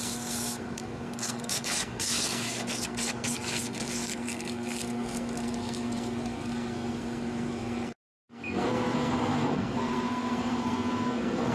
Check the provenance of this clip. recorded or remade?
remade